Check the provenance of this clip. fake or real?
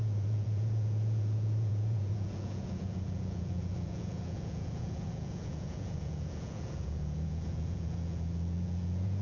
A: fake